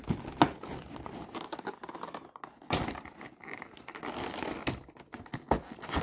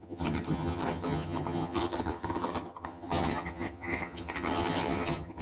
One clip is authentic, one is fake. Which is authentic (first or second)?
first